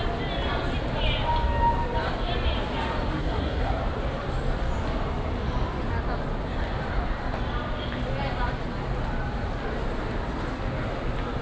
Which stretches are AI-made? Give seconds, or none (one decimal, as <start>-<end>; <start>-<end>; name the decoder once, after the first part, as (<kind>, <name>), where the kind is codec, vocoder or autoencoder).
3.2-3.8 (codec, SNAC)

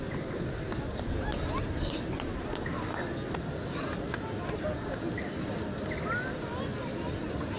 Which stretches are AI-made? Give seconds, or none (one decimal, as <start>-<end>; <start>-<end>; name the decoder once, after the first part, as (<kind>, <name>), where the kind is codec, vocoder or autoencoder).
none